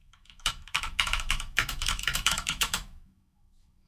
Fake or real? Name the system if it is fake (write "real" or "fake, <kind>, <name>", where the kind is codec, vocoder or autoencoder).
fake, autoencoder, DAC-VAE